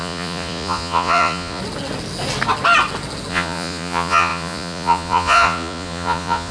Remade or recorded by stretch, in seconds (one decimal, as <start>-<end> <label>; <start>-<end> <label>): 0.0-1.6 remade; 1.6-3.3 recorded; 3.3-6.5 remade